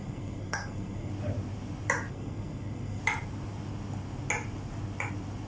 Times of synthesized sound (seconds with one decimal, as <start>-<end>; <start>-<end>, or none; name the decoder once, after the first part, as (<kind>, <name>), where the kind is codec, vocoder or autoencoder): 0.0-1.1 (codec, SNAC); 2.1-3.0